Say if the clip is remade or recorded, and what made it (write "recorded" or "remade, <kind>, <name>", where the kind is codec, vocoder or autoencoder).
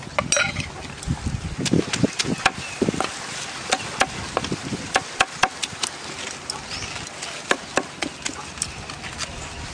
recorded